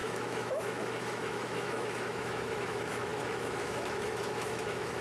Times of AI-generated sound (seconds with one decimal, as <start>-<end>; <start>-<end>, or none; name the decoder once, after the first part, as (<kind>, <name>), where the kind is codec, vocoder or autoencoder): 0.0-5.0 (autoencoder, DAC-VAE)

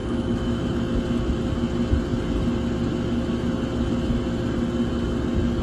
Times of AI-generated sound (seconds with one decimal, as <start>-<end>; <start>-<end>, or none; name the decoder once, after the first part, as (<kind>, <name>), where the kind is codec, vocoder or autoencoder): 0.0-0.7 (autoencoder, DAC-VAE)

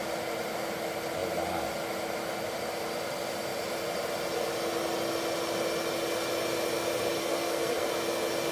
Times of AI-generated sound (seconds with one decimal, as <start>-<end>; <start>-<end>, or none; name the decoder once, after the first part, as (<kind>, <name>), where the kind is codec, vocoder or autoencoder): 7.2-7.9 (codec, SNAC)

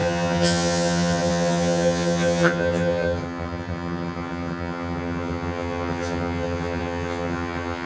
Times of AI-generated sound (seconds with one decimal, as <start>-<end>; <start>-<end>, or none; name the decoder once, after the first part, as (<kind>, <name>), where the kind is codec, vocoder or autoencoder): 0.0-7.9 (vocoder, HiFi-GAN)

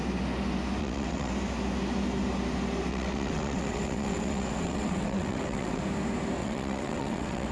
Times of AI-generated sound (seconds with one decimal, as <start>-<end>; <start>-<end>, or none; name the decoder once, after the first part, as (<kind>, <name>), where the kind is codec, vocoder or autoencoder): 0.8-1.3 (vocoder, WaveNeXt); 2.9-5.8; 6.4-7.5